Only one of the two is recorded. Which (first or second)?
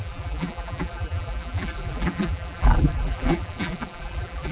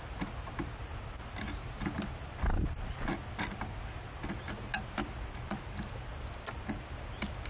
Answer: second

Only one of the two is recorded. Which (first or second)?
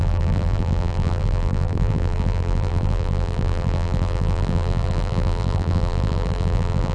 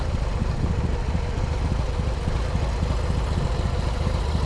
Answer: second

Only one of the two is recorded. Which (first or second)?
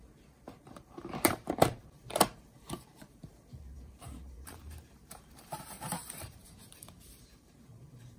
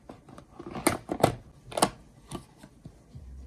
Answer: second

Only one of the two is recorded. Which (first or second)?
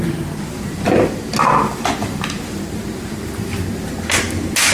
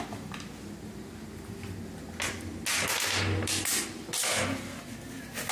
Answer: second